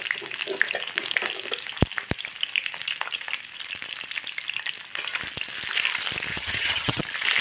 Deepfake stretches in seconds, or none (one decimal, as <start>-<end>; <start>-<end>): 6.3-7.0